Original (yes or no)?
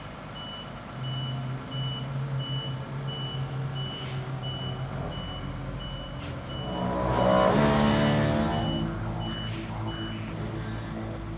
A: yes